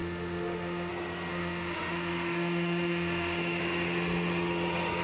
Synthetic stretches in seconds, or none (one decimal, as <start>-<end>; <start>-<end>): 0.0-0.9; 1.3-3.6

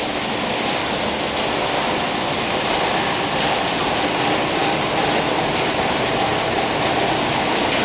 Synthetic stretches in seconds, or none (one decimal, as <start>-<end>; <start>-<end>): none